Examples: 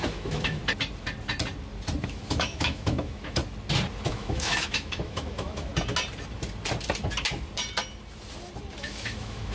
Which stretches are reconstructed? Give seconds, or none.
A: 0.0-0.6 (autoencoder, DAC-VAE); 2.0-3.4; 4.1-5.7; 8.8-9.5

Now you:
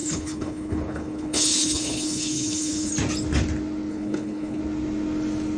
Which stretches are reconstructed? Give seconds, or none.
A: 0.0-2.9 (codec, HILCodec); 3.9-4.6

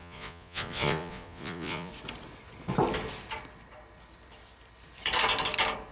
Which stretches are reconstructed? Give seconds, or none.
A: 0.0-1.9 (vocoder, Vocos)

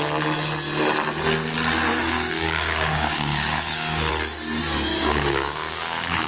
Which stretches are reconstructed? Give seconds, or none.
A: 1.9-4.1 (codec, DAC); 4.9-6.3

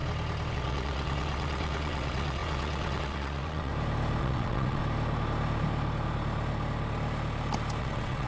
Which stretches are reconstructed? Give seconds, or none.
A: 0.5-3.7 (vocoder, WaveNeXt); 4.2-4.8; 7.8-8.3

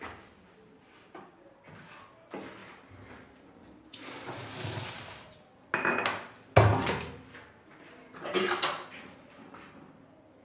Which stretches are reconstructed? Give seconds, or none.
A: none

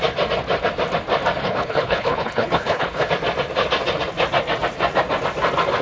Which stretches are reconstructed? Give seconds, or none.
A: 1.4-3.1 (codec, HILCodec)